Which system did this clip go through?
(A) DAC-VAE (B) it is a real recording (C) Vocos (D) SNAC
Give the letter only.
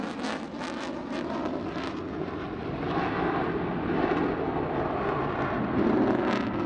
B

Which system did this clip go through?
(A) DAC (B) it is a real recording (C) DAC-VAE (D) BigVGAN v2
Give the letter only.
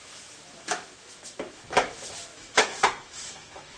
C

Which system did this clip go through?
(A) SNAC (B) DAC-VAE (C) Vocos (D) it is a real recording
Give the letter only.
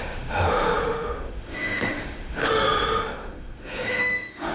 B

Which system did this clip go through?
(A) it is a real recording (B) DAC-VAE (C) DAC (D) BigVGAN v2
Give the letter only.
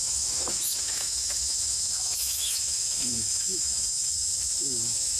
B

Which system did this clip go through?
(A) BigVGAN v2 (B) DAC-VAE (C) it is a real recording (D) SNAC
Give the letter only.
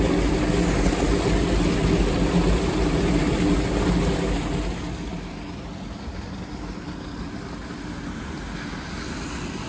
C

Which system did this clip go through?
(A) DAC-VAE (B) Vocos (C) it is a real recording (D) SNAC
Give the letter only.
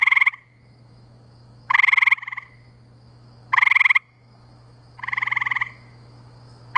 A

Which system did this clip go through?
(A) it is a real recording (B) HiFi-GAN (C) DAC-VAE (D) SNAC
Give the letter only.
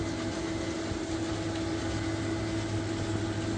A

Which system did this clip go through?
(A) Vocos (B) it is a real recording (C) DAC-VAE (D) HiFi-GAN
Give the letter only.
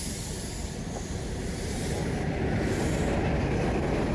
B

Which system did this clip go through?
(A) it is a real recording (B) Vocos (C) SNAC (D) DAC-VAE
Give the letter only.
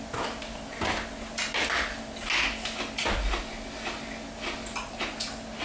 A